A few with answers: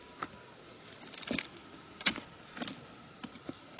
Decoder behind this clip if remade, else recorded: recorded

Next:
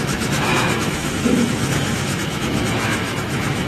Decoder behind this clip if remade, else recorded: remade, autoencoder, DAC-VAE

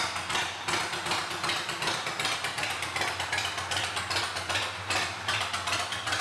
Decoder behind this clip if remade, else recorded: recorded